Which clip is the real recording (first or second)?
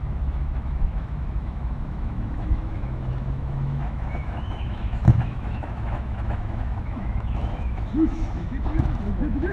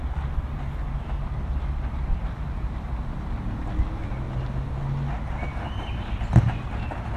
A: second